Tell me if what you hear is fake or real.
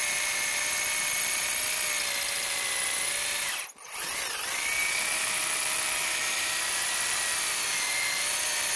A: fake